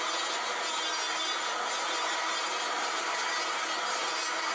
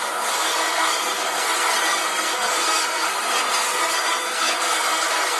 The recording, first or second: first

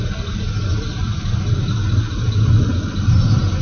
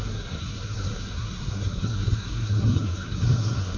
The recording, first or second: first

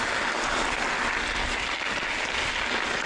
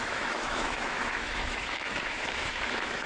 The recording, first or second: first